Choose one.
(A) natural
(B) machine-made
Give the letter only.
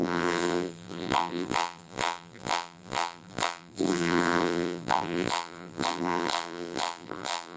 B